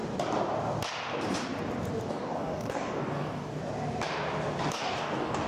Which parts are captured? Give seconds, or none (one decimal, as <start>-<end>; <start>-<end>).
0.0-2.1; 3.6-4.7